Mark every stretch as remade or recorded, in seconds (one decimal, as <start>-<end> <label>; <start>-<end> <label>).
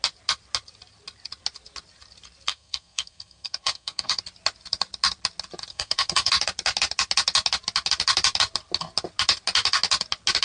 0.0-2.5 recorded; 2.5-4.2 remade; 4.2-5.7 recorded; 5.7-6.3 remade; 6.3-10.4 recorded